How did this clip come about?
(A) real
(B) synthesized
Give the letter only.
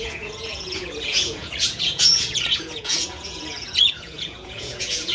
B